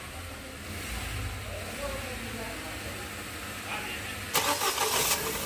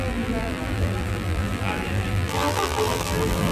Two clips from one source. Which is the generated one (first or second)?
second